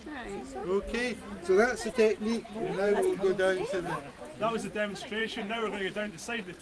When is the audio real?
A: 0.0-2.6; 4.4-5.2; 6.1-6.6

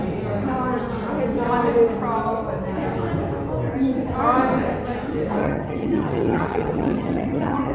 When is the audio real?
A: 0.0-5.4

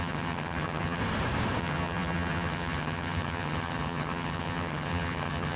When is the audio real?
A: 1.0-1.6